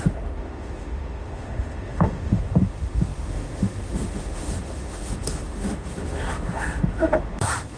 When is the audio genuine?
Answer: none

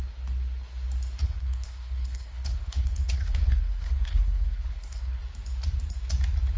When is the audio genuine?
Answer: 0.0-1.2; 5.2-6.6

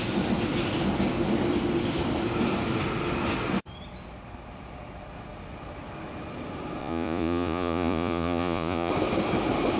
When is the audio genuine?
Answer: 0.0-6.8; 8.9-9.8

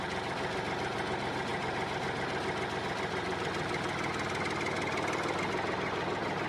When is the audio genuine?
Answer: 0.0-6.5

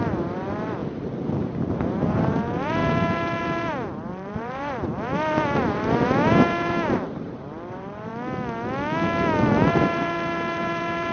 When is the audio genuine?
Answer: 0.8-1.4; 8.1-9.7

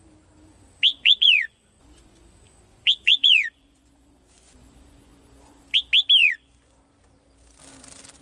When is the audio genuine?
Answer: 0.0-0.9; 5.6-6.2; 6.8-8.2

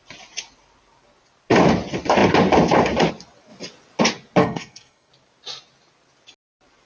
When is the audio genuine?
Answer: 0.0-4.4; 5.1-6.9

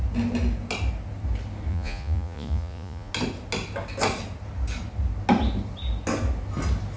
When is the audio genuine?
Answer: 0.0-1.7; 3.1-7.0